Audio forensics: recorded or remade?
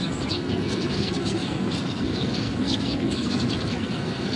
remade